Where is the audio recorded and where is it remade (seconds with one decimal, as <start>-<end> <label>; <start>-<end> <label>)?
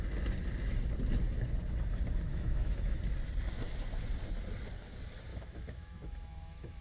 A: 0.0-2.3 recorded; 2.3-3.0 remade; 3.0-5.3 recorded; 5.3-6.8 remade